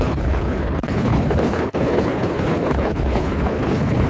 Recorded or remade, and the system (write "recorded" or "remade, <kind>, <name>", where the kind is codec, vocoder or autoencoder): remade, codec, HILCodec